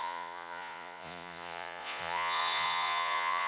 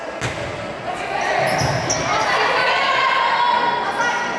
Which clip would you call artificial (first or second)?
first